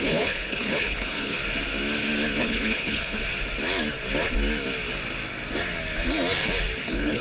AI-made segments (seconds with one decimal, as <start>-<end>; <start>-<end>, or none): 0.0-1.4; 2.4-3.2; 6.8-7.2